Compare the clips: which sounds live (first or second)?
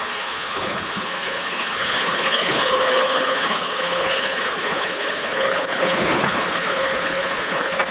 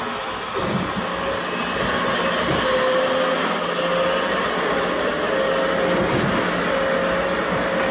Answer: second